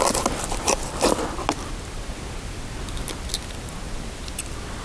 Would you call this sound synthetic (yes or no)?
no